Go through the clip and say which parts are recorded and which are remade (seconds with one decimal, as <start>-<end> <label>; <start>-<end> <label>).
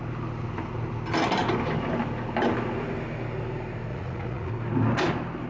0.0-3.9 recorded; 3.9-4.5 remade; 4.5-5.5 recorded